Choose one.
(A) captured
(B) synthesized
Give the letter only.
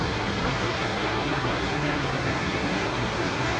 B